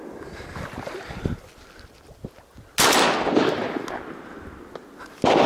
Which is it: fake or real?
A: real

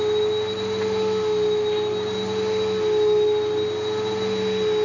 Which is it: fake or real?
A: real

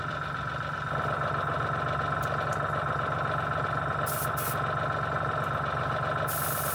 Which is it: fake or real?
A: real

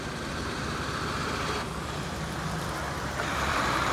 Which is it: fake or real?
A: fake